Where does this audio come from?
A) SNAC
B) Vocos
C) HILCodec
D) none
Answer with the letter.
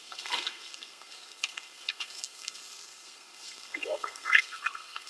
A